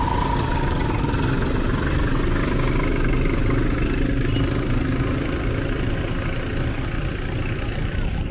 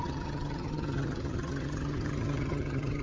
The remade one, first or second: second